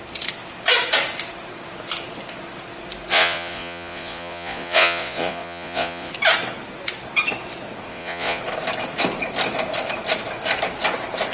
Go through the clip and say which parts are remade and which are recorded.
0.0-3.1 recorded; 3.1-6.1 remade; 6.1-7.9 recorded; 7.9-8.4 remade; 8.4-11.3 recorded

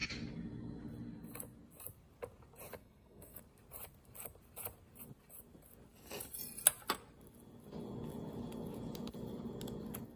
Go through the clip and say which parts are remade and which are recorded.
0.0-2.8 recorded; 2.8-3.4 remade; 3.4-10.2 recorded

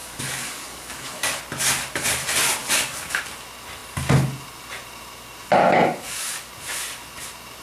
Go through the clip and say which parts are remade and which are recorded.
0.0-1.4 remade; 1.4-2.6 recorded; 2.6-3.2 remade; 3.2-5.6 recorded; 5.6-6.5 remade; 6.5-7.6 recorded

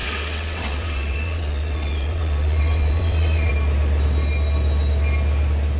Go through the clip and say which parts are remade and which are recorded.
0.0-3.5 remade; 3.5-5.8 recorded

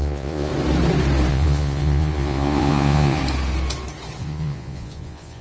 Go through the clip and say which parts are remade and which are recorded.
0.0-0.5 remade; 0.5-1.3 recorded; 1.3-3.2 remade; 3.2-4.2 recorded; 4.2-5.4 remade

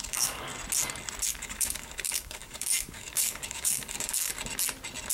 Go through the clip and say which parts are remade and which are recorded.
0.0-0.5 remade; 0.5-1.3 recorded; 1.3-4.3 remade; 4.3-5.1 recorded

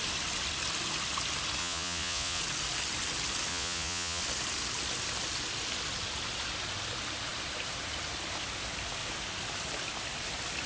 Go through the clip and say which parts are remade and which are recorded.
0.0-1.6 recorded; 1.6-2.4 remade; 2.4-3.5 recorded; 3.5-4.2 remade; 4.2-10.7 recorded

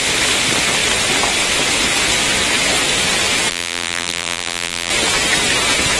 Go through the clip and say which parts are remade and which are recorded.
0.0-3.5 recorded; 3.5-4.9 remade; 4.9-6.0 recorded